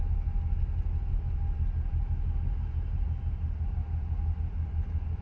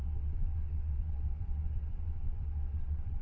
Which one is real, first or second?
first